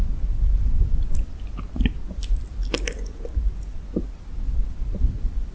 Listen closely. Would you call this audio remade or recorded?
recorded